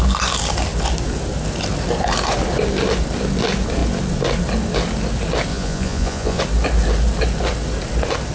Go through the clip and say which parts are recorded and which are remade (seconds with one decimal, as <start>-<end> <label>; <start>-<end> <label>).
0.0-5.5 recorded; 5.5-6.4 remade; 6.4-8.3 recorded